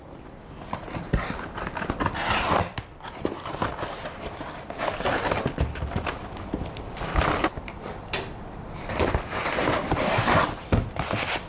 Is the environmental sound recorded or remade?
remade